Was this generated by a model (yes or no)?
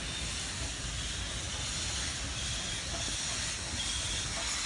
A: no